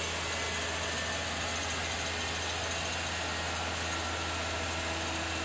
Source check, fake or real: real